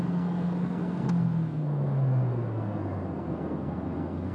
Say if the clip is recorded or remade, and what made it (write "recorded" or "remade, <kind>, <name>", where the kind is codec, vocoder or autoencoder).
remade, codec, SNAC